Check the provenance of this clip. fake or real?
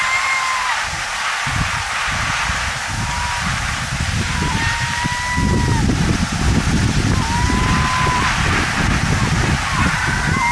real